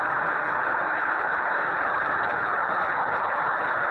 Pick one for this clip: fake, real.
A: fake